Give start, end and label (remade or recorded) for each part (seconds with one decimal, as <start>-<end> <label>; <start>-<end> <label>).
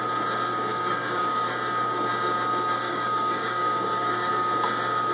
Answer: 0.0-0.7 recorded; 0.7-1.5 remade; 1.5-2.9 recorded; 2.9-4.3 remade; 4.3-5.1 recorded